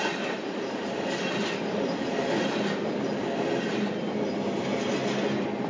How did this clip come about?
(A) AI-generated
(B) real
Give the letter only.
B